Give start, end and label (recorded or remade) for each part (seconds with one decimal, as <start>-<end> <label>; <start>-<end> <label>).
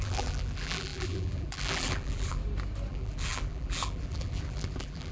0.0-2.4 remade; 2.4-2.9 recorded; 2.9-5.1 remade